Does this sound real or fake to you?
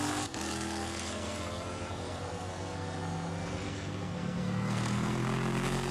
fake